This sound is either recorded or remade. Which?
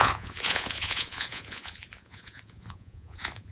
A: remade